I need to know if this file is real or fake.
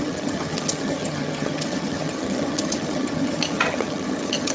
fake